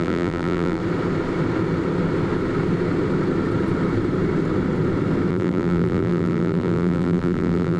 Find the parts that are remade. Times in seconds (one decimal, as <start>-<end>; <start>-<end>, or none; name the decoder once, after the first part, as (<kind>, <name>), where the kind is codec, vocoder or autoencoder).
0.0-0.8 (vocoder, BigVGAN v2); 5.3-7.8